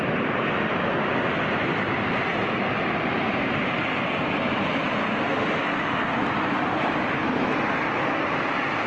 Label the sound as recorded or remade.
recorded